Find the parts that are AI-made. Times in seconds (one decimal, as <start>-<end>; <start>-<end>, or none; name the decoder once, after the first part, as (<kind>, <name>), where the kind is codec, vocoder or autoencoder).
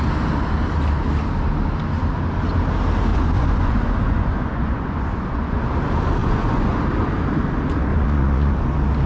3.1-5.6 (vocoder, Vocos); 6.2-6.8; 7.9-8.5